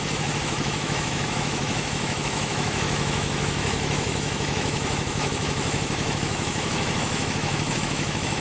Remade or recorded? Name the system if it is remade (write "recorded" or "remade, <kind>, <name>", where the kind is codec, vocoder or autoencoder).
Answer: remade, autoencoder, DAC-VAE